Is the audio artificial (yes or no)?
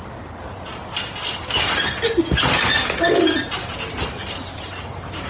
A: no